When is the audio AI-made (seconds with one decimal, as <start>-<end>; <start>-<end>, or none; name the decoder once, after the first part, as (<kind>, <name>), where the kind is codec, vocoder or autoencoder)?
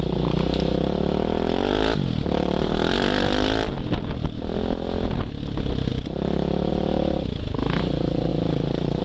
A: none